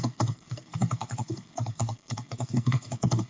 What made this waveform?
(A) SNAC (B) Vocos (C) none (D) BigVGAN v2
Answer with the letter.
A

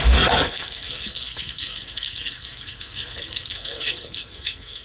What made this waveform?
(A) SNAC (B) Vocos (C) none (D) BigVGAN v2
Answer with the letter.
A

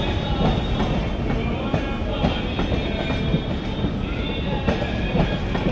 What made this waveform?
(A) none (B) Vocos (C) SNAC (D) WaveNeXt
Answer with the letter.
A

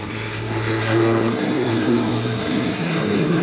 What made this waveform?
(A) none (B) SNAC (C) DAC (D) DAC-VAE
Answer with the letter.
B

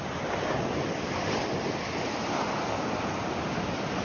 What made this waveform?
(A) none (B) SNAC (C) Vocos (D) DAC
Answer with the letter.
A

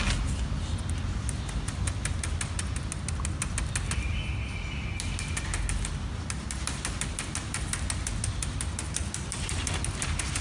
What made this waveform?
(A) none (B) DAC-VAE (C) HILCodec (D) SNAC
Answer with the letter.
A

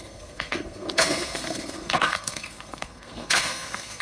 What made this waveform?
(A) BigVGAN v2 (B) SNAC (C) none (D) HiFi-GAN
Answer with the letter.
B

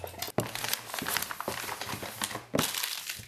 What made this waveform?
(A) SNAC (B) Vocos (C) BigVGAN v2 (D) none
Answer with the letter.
D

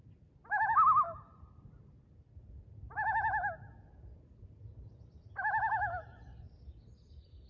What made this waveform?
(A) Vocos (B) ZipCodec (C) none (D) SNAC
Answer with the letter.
C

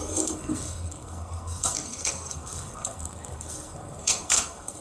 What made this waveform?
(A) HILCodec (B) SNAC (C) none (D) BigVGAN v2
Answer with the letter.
B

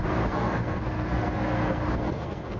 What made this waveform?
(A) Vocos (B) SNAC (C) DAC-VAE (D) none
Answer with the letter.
B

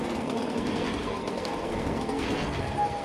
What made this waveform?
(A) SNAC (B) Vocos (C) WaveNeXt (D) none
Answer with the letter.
A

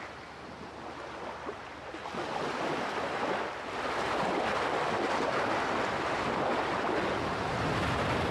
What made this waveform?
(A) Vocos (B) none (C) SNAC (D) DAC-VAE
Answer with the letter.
B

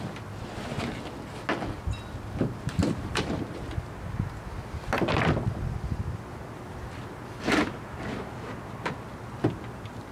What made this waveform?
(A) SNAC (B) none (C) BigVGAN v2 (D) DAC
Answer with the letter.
B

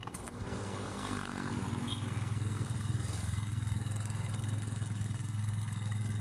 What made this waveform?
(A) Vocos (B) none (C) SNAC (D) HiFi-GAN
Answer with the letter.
C